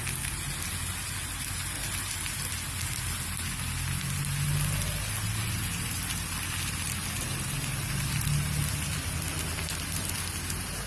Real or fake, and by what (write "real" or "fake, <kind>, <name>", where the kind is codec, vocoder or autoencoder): real